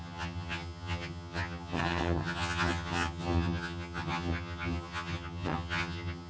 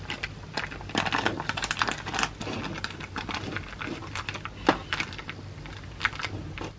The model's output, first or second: first